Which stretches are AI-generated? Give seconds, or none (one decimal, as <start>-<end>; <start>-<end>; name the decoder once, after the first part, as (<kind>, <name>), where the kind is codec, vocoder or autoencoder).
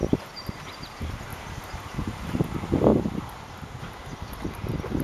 0.0-0.6 (vocoder, BigVGAN v2); 1.3-2.4